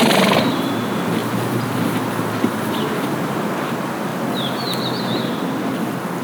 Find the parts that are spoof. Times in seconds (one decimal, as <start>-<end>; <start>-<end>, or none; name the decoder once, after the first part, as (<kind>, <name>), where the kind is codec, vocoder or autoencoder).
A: none